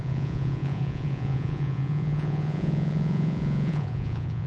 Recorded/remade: remade